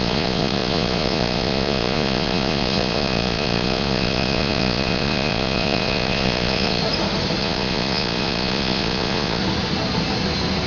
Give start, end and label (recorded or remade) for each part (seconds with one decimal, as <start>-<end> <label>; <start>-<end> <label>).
0.0-6.8 remade; 6.8-7.4 recorded; 7.4-9.4 remade; 9.4-10.7 recorded